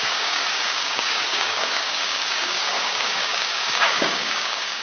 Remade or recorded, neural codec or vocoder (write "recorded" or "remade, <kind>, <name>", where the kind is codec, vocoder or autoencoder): remade, codec, DAC